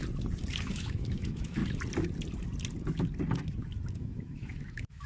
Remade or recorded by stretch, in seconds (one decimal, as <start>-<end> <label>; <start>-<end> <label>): 0.0-0.6 recorded; 0.6-1.6 remade; 1.6-3.9 recorded; 3.9-5.1 remade